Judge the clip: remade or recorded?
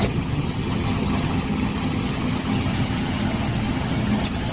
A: remade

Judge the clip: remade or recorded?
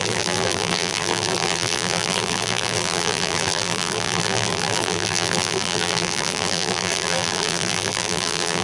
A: remade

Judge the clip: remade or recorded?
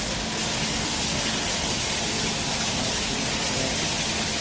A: recorded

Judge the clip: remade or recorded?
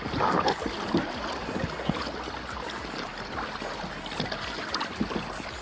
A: recorded